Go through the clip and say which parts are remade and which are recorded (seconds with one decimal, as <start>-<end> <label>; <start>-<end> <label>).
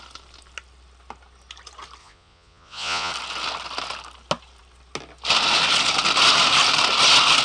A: 0.0-2.0 recorded; 2.0-3.1 remade; 3.1-7.4 recorded